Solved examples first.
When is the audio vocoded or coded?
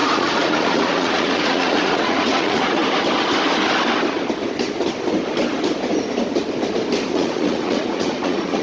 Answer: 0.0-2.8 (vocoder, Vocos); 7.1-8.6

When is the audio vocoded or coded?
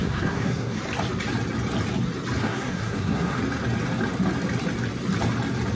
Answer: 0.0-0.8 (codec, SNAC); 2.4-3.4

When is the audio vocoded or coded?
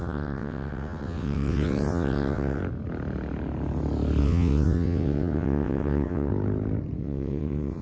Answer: 0.0-2.6 (vocoder, WaveNeXt); 4.2-6.3; 7.0-7.8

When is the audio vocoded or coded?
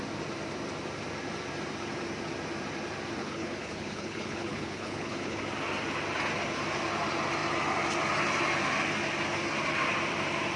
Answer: 3.2-5.4 (codec, HILCodec)